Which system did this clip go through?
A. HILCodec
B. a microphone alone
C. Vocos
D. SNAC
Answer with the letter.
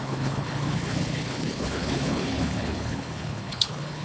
A